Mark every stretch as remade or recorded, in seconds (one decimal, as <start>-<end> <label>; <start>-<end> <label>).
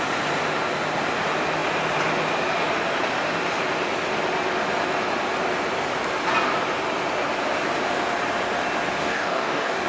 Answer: 0.0-9.0 recorded; 9.0-9.9 remade